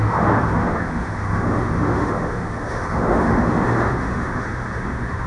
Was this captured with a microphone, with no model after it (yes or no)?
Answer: no